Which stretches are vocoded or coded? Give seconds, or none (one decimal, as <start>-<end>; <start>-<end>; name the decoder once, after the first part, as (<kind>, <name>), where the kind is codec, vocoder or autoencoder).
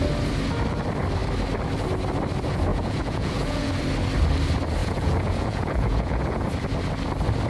2.7-3.7 (vocoder, Vocos); 4.8-6.5